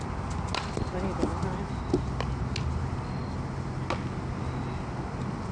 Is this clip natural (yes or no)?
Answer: yes